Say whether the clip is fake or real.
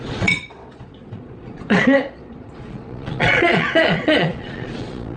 fake